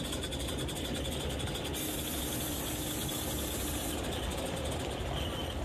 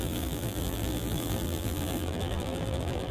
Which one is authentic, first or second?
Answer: first